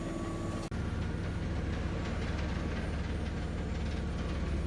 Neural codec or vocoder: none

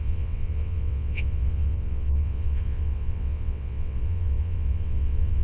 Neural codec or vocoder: vocoder, WaveNeXt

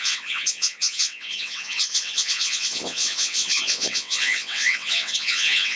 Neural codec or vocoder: vocoder, WaveNeXt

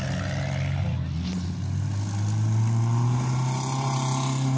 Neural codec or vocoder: none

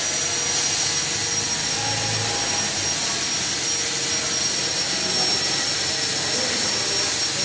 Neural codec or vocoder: none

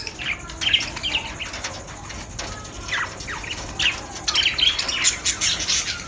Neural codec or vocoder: none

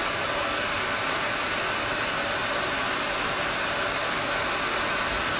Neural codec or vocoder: none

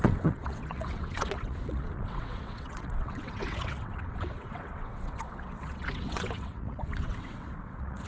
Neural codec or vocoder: vocoder, WaveNeXt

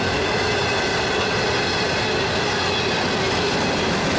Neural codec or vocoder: none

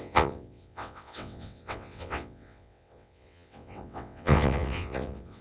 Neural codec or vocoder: vocoder, WaveNeXt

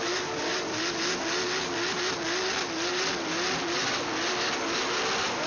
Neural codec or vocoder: none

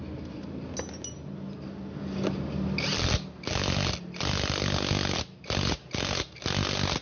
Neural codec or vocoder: none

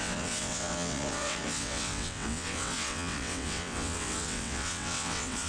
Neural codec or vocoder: vocoder, WaveNeXt